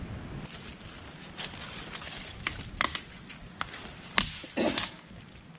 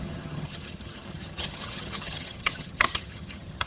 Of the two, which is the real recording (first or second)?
first